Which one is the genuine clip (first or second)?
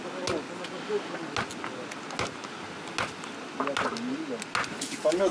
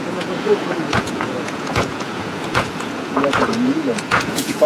first